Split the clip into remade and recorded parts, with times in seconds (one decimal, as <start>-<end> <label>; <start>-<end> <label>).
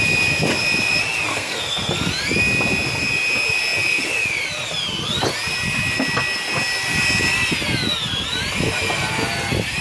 0.0-1.3 recorded; 1.3-1.9 remade; 1.9-9.8 recorded